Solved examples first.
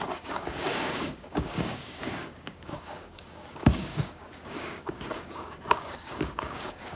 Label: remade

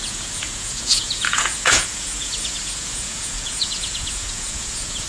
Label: remade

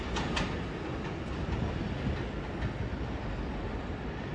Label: recorded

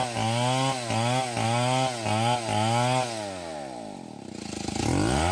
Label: recorded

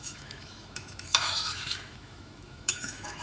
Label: remade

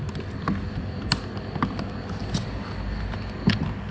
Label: recorded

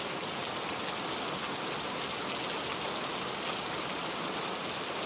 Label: recorded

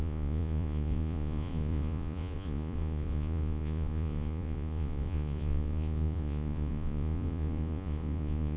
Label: remade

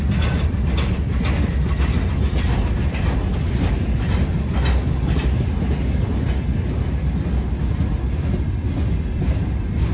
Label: recorded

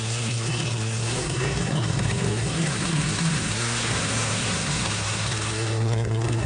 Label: remade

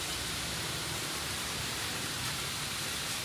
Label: remade